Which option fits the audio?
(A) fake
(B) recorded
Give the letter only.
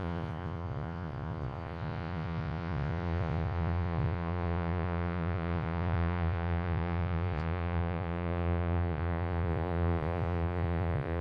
A